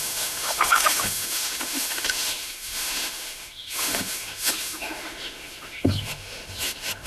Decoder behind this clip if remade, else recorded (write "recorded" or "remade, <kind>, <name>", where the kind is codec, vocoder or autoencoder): remade, autoencoder, DAC-VAE